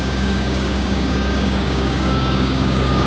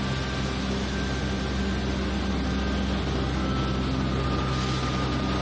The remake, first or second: first